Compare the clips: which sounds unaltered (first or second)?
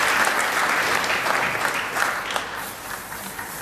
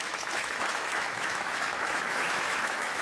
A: first